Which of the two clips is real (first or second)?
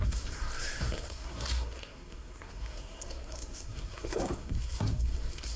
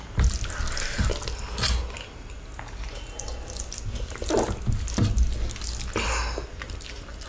second